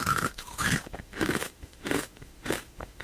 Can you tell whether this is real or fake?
fake